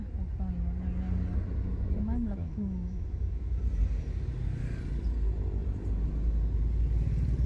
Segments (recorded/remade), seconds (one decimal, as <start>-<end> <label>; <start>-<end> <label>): 0.0-1.7 recorded; 1.7-3.6 remade; 3.6-7.5 recorded

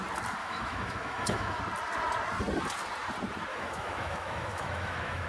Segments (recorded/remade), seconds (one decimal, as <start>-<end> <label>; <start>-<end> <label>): 0.0-0.4 recorded; 0.4-1.6 remade; 1.6-3.5 recorded; 3.5-5.3 remade

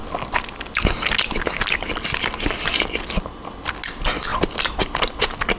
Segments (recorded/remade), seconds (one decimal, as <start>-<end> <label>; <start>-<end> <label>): 0.0-5.6 recorded

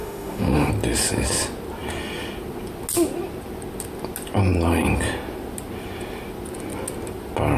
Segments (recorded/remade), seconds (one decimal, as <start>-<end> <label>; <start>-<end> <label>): 0.0-0.7 remade; 0.7-7.6 recorded

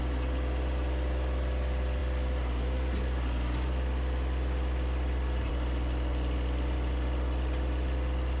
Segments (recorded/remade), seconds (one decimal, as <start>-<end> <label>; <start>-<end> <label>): 0.0-8.4 recorded